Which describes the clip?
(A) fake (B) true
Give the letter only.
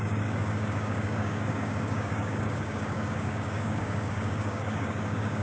A